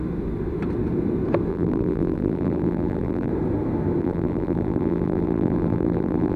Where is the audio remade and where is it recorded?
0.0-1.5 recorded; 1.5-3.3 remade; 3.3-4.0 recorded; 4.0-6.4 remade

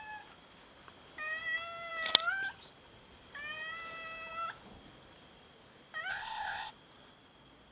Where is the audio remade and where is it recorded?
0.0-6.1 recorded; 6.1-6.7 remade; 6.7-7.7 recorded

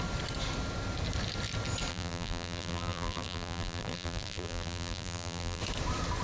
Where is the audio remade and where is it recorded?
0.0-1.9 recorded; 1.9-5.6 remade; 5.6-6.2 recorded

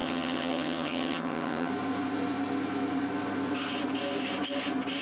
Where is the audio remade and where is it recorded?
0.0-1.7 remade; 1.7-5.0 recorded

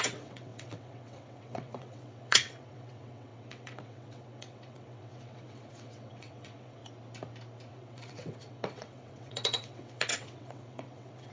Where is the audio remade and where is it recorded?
0.0-6.8 remade; 6.8-7.7 recorded; 7.7-11.3 remade

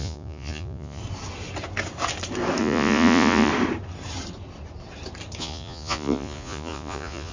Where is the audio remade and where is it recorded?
0.0-1.0 remade; 1.0-2.6 recorded; 2.6-3.5 remade; 3.5-5.4 recorded; 5.4-7.3 remade